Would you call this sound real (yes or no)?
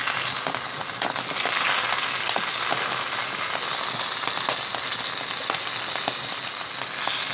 yes